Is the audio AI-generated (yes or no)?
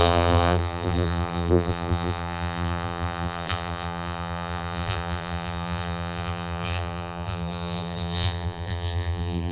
yes